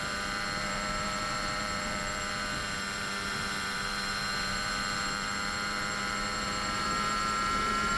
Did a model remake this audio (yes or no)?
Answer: yes